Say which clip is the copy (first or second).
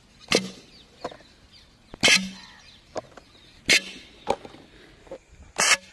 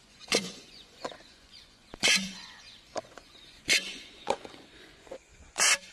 second